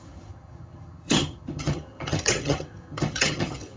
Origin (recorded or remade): remade